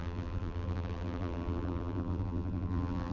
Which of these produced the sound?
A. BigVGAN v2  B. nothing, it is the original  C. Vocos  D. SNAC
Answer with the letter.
A